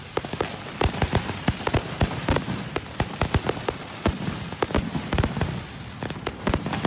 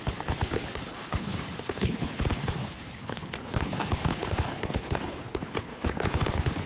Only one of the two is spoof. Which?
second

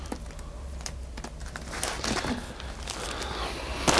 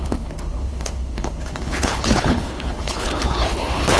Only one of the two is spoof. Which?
second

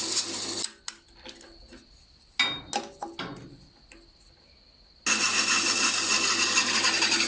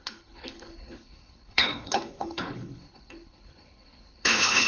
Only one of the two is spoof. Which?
second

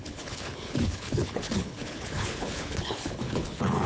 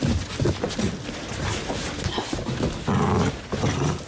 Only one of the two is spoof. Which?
first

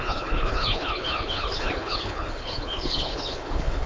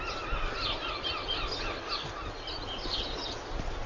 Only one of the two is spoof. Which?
first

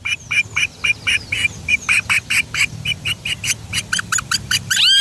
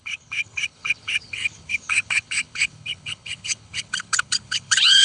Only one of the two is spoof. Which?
second